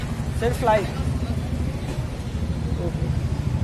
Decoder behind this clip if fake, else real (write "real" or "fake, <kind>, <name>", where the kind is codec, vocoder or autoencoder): real